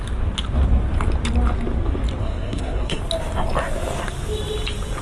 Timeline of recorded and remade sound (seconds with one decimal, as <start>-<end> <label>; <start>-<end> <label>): 0.0-2.2 recorded; 2.2-3.0 remade; 3.0-5.0 recorded